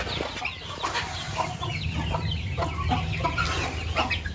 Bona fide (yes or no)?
yes